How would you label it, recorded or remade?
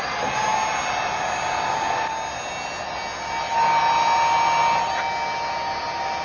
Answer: recorded